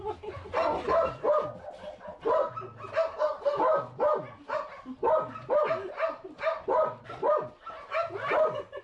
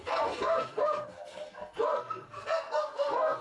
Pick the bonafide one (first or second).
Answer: first